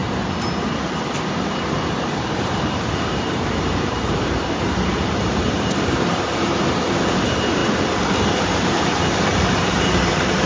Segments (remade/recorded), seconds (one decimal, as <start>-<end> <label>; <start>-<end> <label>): 0.0-1.9 recorded; 1.9-7.6 remade; 7.6-8.4 recorded; 8.4-10.5 remade